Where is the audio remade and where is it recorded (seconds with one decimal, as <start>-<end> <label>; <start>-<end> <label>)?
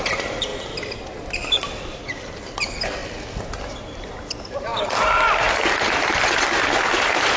0.0-3.0 remade; 3.0-3.6 recorded; 3.6-7.4 remade